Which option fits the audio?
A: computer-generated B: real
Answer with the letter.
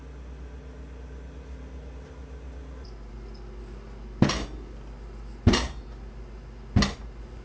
B